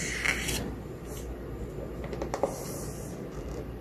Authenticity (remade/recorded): recorded